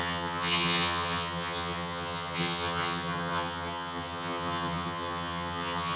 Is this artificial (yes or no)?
yes